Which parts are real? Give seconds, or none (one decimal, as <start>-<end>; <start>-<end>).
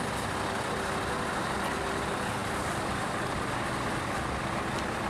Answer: 0.0-5.1